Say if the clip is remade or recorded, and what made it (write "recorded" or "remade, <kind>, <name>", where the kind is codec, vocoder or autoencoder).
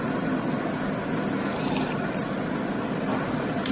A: recorded